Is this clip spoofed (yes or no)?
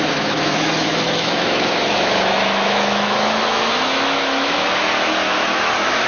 yes